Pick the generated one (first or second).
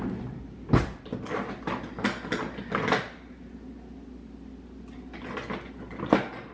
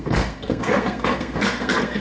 second